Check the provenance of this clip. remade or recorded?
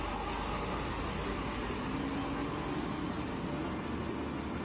recorded